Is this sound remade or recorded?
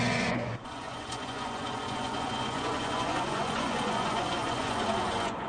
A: remade